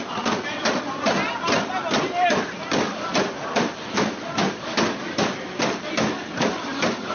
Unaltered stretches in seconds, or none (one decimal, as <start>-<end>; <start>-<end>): 0.0-7.1